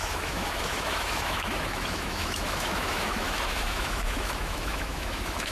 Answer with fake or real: fake